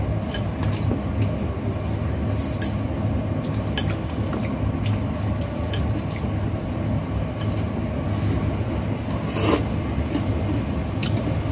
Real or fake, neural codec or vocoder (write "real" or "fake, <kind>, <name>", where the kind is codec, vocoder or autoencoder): real